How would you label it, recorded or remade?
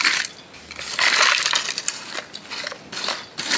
recorded